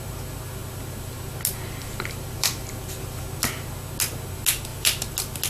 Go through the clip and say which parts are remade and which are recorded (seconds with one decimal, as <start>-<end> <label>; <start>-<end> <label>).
0.0-5.5 recorded